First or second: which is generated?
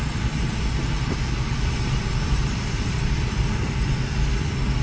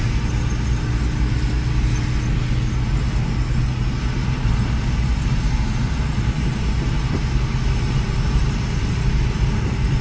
first